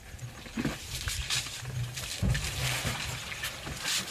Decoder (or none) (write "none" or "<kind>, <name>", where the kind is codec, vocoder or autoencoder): none